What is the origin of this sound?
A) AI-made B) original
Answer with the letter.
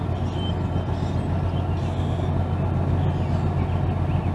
B